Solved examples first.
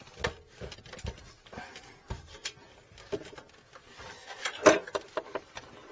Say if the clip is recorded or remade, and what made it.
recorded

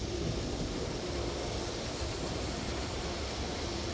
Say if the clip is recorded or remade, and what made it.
recorded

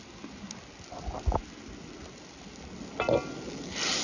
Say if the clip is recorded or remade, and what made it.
recorded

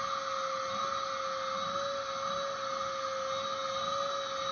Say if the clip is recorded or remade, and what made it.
recorded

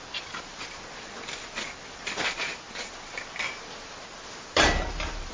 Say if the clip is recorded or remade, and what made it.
recorded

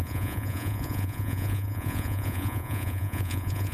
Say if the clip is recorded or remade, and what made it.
remade, vocoder, Vocos